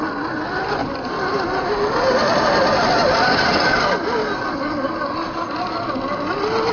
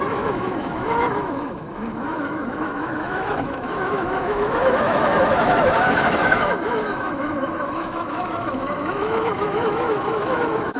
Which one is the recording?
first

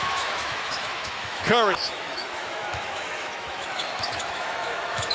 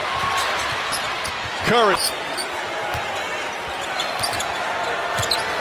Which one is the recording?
second